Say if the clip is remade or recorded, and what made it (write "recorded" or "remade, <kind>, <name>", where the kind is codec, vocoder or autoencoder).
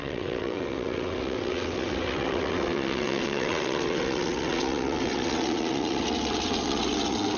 remade, vocoder, WaveNeXt